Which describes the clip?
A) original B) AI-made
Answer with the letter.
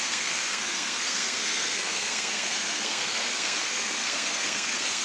B